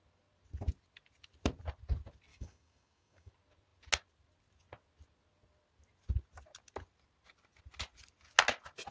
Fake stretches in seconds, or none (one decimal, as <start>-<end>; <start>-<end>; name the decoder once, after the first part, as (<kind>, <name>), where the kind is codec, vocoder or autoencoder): 2.3-3.3 (codec, DAC)